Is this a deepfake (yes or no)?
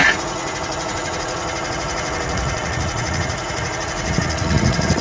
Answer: yes